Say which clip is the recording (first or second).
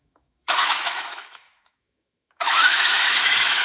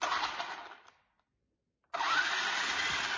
second